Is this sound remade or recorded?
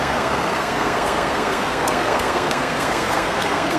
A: remade